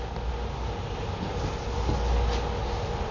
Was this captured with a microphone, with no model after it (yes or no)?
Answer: yes